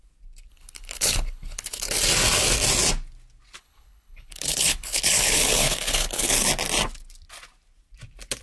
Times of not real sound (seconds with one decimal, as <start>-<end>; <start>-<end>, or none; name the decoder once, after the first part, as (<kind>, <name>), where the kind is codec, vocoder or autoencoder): 0.5-2.0 (codec, HILCodec); 3.6-6.5